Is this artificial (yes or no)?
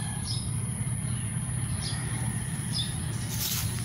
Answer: yes